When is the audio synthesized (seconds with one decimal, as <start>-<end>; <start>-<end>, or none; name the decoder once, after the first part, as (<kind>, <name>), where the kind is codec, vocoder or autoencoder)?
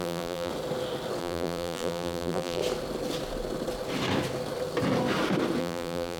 0.0-0.5 (vocoder, BigVGAN v2); 1.2-2.6; 5.6-6.2